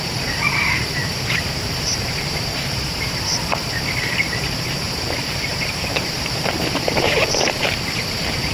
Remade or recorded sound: remade